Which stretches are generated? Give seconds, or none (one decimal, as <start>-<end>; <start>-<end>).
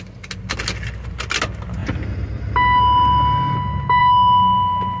none